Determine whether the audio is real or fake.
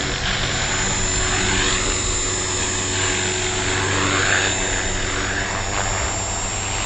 real